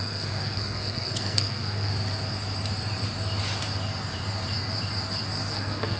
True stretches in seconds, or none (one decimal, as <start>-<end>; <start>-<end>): 1.9-5.5